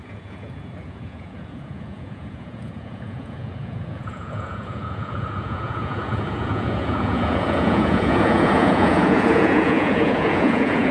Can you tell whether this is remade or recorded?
remade